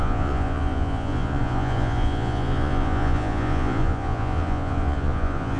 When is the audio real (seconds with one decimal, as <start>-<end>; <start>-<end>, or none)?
none